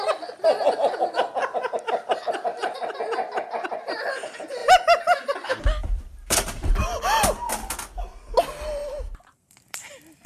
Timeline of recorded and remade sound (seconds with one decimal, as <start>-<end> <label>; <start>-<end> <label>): 0.0-2.5 recorded; 2.5-3.0 remade; 3.0-4.6 recorded; 4.6-6.7 remade; 6.7-8.8 recorded; 8.8-9.9 remade; 9.9-10.3 recorded